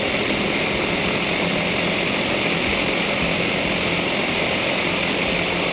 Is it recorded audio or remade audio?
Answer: recorded